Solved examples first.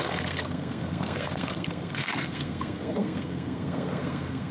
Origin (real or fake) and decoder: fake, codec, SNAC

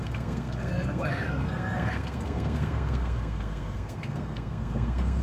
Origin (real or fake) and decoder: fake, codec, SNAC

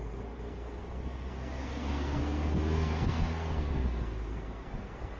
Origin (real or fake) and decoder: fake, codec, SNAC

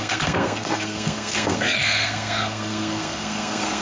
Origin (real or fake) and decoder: fake, codec, SNAC